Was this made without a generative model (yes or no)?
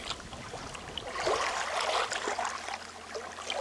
yes